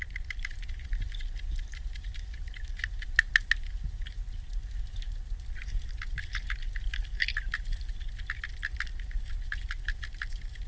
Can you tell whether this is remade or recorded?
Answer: recorded